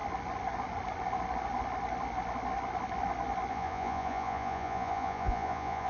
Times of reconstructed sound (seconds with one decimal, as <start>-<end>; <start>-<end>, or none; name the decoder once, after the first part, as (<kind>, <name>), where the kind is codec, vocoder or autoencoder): 3.5-5.9 (vocoder, Vocos)